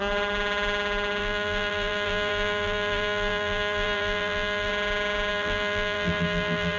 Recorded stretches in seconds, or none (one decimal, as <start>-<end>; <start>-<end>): 0.0-1.2; 4.7-5.3

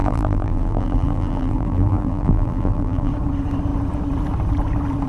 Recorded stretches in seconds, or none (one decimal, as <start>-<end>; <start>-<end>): 3.1-5.1

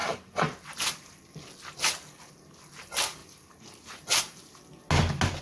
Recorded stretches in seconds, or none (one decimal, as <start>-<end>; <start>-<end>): 1.1-3.2; 4.7-5.4